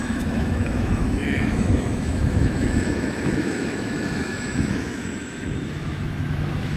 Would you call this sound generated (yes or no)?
yes